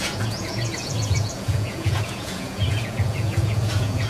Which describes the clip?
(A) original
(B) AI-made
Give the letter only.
B